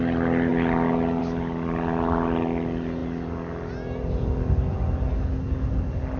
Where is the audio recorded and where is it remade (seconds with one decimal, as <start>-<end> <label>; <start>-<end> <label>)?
0.0-6.2 recorded